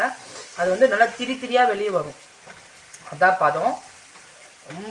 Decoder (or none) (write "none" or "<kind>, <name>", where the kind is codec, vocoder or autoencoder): none